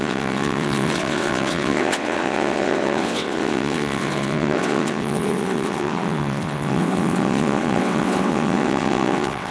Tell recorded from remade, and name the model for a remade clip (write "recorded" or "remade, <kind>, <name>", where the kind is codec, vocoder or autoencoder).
remade, vocoder, WaveNeXt